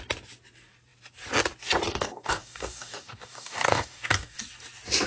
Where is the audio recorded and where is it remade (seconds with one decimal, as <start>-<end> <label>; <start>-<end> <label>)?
0.0-1.9 recorded; 1.9-4.4 remade; 4.4-5.1 recorded